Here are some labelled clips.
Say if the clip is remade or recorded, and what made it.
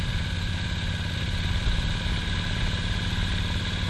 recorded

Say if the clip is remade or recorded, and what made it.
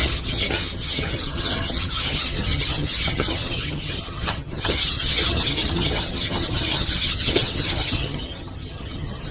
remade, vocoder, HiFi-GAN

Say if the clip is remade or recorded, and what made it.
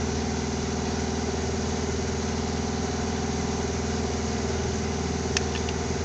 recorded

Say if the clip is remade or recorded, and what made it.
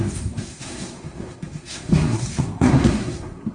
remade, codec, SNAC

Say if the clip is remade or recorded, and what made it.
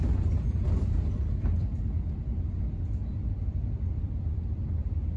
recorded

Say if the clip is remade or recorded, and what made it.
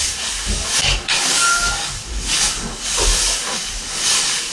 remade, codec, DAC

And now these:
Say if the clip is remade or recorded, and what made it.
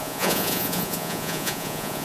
remade, vocoder, Vocos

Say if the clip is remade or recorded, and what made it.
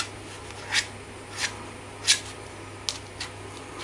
recorded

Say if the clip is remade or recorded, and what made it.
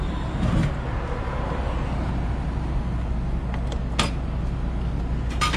recorded